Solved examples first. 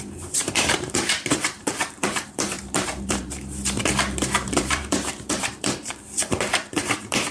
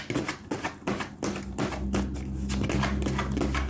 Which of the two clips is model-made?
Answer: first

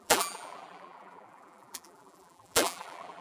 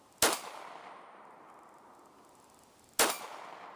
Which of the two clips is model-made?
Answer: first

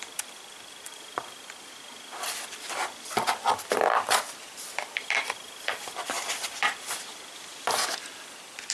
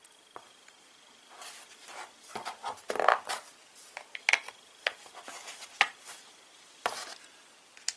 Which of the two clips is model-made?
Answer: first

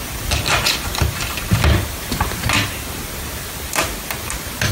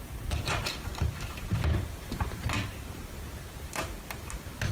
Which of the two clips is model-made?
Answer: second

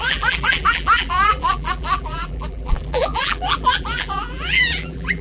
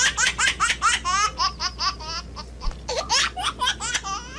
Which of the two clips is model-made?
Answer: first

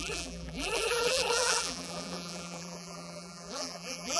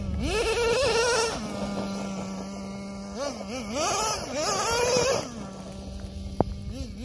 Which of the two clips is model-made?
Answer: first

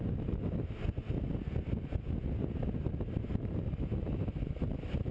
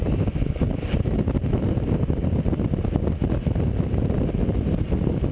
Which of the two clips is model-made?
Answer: second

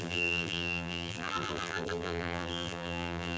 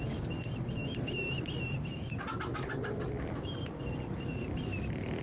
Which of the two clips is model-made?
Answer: first